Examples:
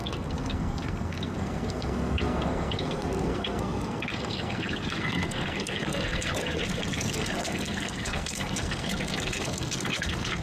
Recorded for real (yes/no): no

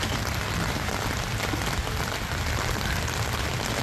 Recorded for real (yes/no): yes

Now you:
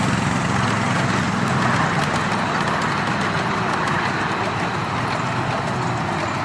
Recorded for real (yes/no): yes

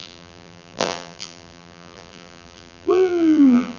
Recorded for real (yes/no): no